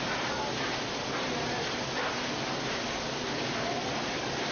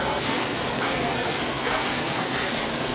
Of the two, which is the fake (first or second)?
second